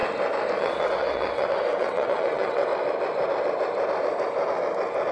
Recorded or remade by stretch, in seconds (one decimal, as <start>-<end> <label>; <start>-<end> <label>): 0.0-0.6 recorded; 0.6-2.7 remade; 2.7-5.1 recorded